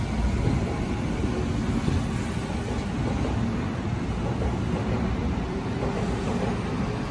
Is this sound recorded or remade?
recorded